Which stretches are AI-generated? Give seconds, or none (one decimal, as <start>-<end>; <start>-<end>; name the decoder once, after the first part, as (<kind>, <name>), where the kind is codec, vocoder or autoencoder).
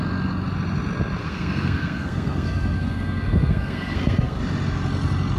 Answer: 1.2-4.4 (codec, SNAC)